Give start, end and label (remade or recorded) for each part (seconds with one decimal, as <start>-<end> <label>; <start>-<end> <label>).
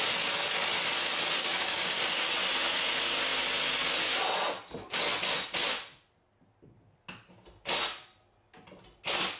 0.0-1.4 recorded; 1.4-2.0 remade; 2.0-9.4 recorded